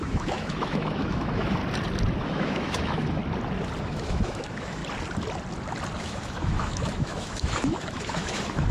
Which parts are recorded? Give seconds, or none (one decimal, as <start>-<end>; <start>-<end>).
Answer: 1.6-2.2; 3.2-3.8; 4.8-6.0